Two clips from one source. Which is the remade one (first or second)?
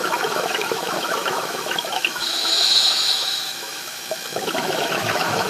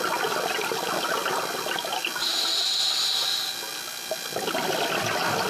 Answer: first